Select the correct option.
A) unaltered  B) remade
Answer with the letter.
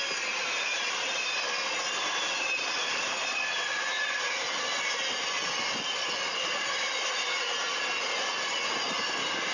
A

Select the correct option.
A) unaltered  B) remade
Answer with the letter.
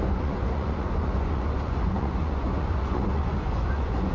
B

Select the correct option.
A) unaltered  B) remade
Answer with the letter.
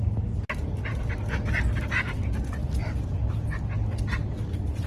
A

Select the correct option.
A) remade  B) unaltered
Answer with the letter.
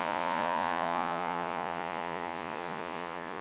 A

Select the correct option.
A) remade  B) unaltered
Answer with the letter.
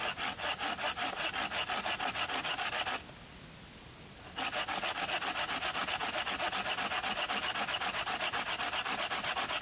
B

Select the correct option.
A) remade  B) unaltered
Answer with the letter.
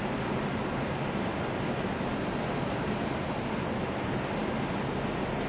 B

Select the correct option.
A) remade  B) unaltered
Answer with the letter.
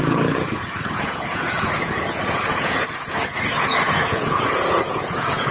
A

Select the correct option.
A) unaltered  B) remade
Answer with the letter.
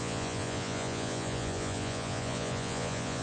B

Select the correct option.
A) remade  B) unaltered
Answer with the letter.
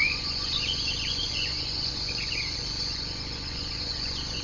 A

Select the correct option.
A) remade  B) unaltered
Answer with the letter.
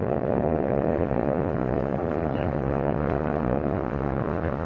A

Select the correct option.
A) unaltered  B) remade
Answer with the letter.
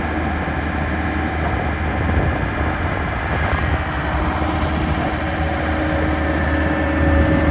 A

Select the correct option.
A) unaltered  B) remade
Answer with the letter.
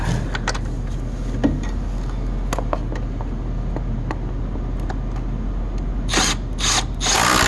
A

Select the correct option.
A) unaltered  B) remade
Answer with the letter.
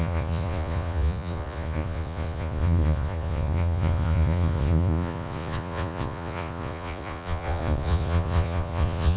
B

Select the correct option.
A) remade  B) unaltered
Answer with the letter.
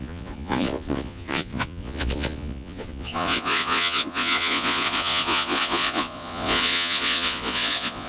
A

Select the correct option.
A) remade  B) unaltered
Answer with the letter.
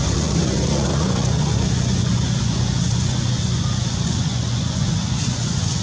A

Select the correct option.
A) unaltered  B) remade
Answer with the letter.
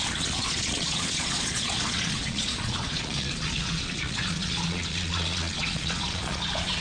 B